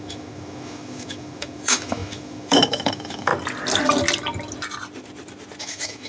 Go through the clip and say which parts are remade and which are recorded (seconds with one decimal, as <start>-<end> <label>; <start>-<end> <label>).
0.0-3.3 remade; 3.3-5.6 recorded; 5.6-6.1 remade